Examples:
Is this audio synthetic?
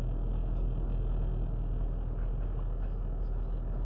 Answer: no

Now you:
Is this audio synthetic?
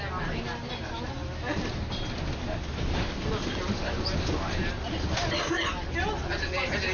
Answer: no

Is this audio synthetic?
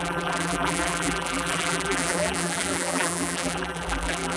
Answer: yes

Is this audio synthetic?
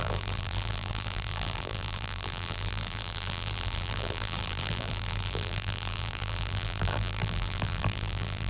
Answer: yes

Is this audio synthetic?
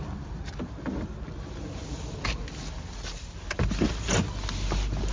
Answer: no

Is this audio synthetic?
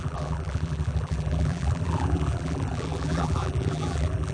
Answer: yes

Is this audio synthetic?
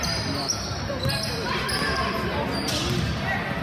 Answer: no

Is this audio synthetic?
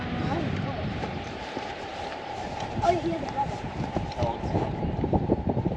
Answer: yes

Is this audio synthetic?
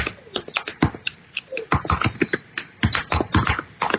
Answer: no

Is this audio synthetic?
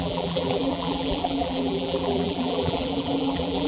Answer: yes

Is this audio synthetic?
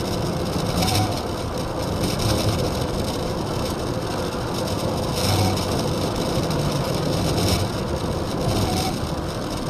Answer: yes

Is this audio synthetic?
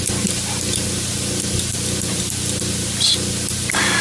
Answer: no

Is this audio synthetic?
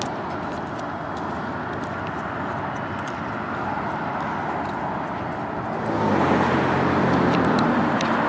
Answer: no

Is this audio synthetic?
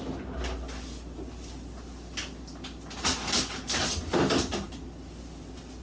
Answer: no